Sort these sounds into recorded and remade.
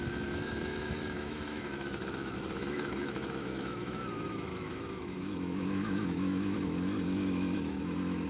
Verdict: remade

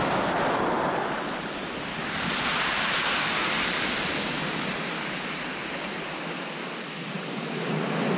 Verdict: recorded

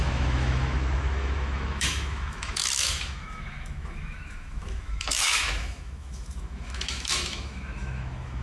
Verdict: remade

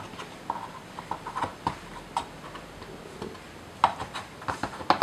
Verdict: recorded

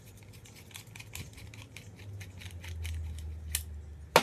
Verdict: recorded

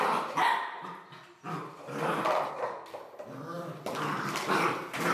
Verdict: recorded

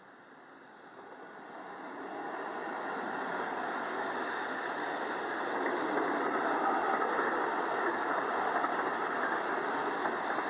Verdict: recorded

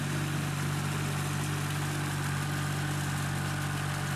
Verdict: recorded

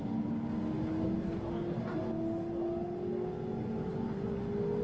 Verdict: recorded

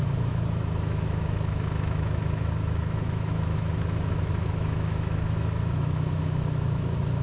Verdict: remade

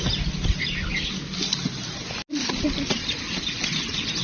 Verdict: recorded